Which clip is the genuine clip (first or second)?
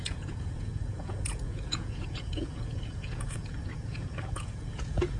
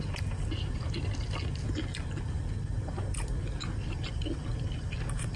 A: second